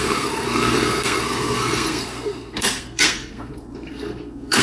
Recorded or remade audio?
remade